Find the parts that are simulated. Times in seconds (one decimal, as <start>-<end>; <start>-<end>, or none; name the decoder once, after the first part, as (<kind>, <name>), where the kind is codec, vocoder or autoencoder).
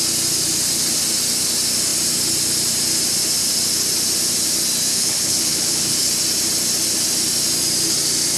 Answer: 4.9-6.1 (codec, HILCodec)